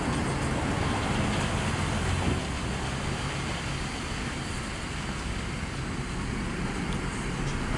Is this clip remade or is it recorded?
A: recorded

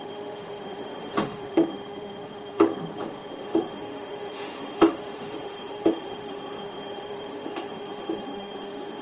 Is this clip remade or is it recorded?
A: remade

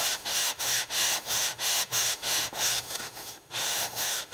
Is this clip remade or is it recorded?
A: remade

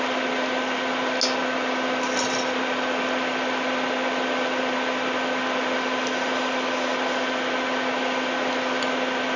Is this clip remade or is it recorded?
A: recorded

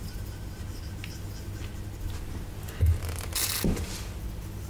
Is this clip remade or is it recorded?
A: recorded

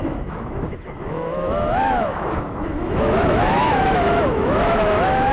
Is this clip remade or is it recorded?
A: remade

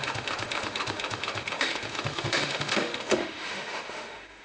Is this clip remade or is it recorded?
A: remade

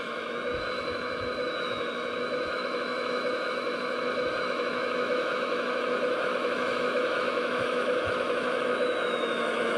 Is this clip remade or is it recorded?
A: remade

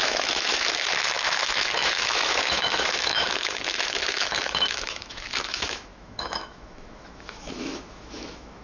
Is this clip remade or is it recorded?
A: remade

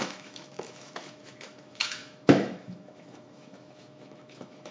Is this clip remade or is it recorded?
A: remade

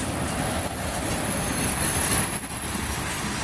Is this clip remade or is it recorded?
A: recorded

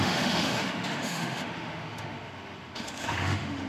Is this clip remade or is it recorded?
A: remade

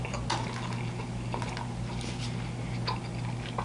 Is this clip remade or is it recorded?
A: recorded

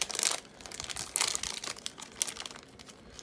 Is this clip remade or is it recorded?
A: recorded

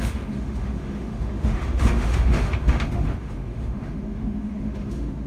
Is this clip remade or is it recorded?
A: remade